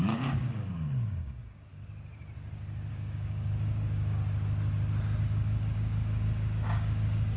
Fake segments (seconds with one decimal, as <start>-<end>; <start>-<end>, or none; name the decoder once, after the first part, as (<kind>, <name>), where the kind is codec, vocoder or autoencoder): 0.0-1.7 (codec, DAC); 2.9-4.2; 5.2-7.4